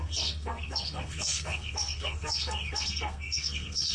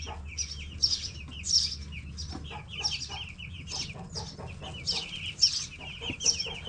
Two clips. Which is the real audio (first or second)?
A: second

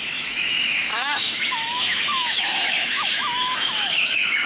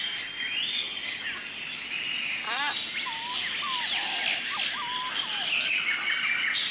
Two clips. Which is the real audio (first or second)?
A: second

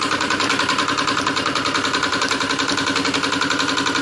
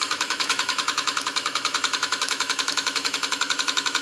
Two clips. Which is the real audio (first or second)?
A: first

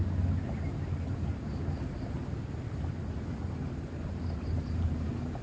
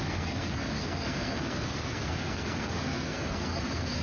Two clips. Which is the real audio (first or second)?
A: first